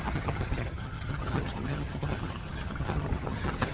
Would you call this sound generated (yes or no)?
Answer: yes